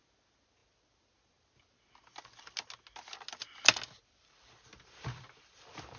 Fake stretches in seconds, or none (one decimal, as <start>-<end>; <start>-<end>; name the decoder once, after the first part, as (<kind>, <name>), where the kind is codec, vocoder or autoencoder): none